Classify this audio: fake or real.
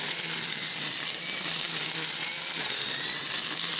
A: fake